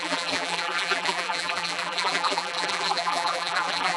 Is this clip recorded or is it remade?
remade